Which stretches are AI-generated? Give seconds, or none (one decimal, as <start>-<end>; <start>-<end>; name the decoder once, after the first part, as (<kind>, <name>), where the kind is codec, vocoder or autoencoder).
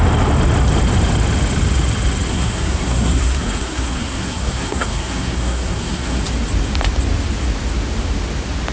2.3-6.2 (codec, SNAC)